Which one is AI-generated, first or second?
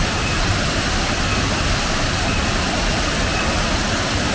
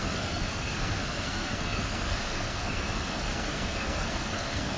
second